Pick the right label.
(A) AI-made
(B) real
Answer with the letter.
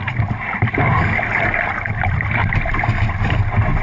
B